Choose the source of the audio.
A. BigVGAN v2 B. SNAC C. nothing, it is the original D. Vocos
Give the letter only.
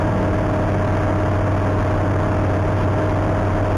C